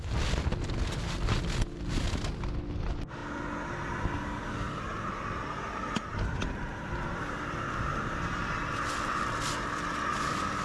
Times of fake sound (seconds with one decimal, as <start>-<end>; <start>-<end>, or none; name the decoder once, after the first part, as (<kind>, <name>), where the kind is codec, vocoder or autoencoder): 6.1-8.6 (vocoder, BigVGAN v2)